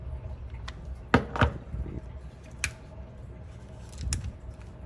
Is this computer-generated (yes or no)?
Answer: no